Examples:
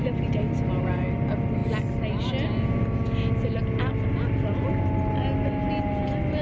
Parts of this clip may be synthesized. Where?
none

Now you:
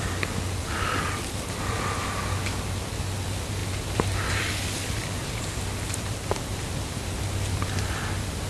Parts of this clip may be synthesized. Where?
none

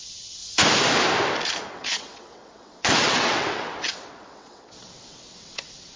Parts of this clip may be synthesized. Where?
0.0-0.4 (vocoder, WaveNeXt); 1.7-6.0

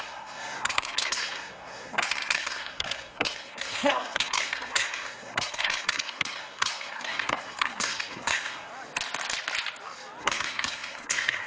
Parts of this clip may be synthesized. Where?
0.0-8.7 (codec, SNAC); 10.2-11.5